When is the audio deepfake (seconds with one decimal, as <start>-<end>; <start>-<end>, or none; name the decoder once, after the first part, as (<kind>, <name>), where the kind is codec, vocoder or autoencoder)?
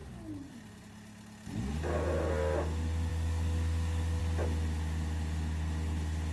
3.1-4.2 (codec, DAC)